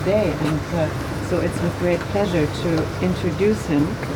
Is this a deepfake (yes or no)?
no